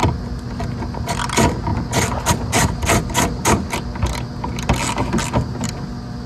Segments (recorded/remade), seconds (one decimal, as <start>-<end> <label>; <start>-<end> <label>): 0.0-6.3 recorded